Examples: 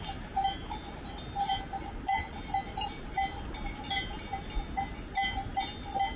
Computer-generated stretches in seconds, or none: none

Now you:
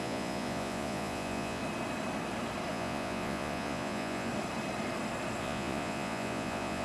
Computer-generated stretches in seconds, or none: 0.0-1.6; 2.7-4.3; 5.4-6.8